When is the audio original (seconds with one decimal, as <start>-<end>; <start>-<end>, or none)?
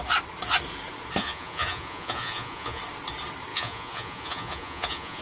0.0-1.2; 2.8-3.5